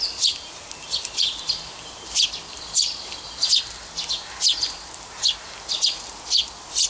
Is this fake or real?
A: real